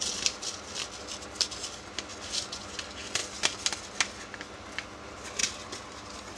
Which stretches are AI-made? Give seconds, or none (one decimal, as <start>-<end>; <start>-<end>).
2.1-2.8